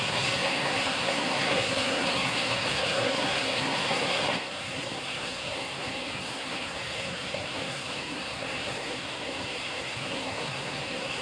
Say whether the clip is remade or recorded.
remade